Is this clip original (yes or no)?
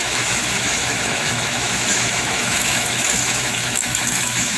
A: no